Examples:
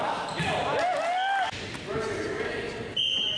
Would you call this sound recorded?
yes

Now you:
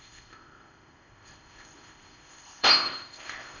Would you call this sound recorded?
no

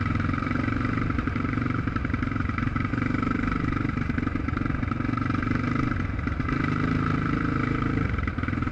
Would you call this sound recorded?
no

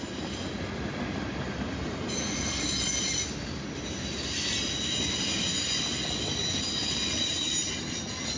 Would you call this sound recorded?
yes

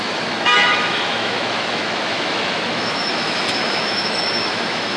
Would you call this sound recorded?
no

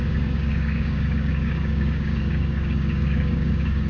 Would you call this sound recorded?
no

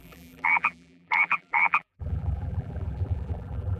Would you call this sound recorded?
no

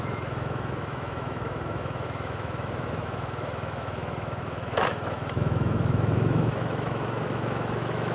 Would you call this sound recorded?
no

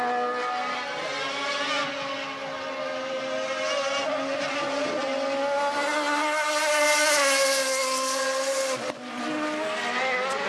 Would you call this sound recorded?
yes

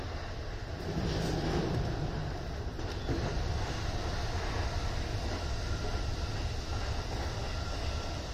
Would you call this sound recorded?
yes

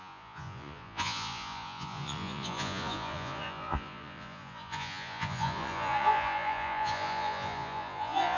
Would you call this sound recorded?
no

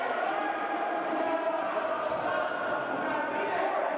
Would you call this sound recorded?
yes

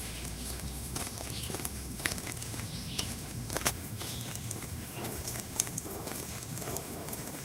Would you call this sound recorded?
no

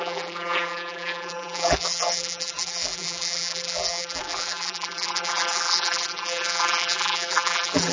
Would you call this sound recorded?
no